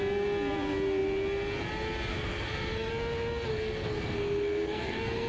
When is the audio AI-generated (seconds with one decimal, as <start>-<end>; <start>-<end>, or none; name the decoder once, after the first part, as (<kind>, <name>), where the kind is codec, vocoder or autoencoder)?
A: 2.1-2.9 (codec, SNAC); 3.5-5.3